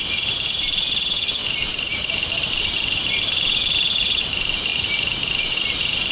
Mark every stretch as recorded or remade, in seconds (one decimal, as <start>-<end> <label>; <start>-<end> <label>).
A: 0.0-6.1 remade

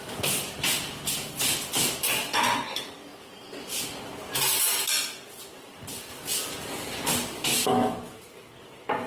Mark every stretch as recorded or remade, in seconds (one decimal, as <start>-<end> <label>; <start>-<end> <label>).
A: 0.0-7.5 recorded; 7.5-8.2 remade; 8.2-9.1 recorded

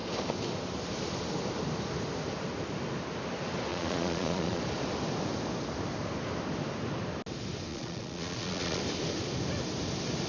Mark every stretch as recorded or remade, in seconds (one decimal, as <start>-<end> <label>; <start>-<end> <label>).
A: 0.0-3.7 recorded; 3.7-4.6 remade; 4.6-7.7 recorded; 7.7-8.8 remade; 8.8-10.3 recorded

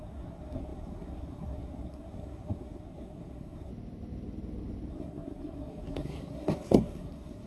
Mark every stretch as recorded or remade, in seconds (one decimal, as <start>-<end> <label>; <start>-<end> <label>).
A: 0.0-3.7 remade; 3.7-4.9 recorded; 4.9-7.5 remade

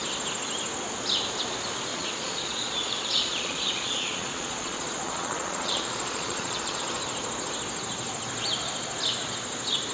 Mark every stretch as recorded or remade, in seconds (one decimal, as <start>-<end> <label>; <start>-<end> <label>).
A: 0.0-1.9 recorded; 1.9-6.8 remade; 6.8-9.9 recorded

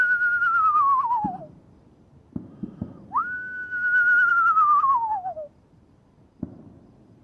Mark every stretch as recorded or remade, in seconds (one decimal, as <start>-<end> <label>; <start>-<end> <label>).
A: 0.0-7.2 recorded